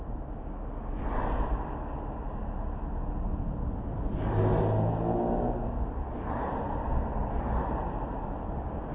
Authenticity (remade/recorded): recorded